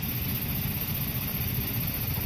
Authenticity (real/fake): real